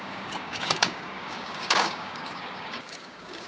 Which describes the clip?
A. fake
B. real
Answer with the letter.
A